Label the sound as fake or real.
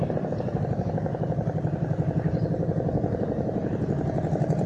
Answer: real